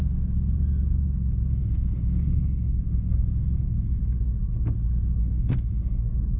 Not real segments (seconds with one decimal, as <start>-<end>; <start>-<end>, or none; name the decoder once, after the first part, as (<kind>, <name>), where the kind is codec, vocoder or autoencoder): 1.5-4.0 (codec, SNAC); 5.2-6.0

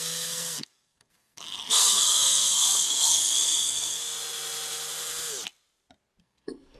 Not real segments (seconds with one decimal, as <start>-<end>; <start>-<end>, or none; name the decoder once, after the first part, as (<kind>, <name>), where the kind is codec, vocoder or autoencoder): 0.0-4.0 (codec, SNAC); 6.2-6.8

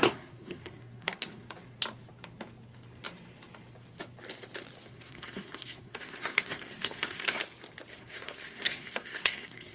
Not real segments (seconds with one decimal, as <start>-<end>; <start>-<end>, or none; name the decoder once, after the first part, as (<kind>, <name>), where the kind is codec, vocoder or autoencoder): 0.0-1.4 (codec, SNAC); 4.9-7.4; 7.9-9.7

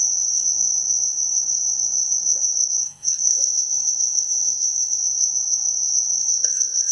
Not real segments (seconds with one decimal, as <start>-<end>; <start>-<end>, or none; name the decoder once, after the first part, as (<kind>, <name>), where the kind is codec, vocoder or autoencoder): 0.0-6.9 (codec, SNAC)